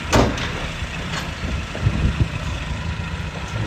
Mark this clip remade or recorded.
recorded